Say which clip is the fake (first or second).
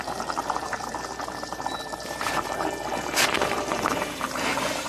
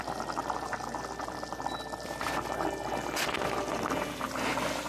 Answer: first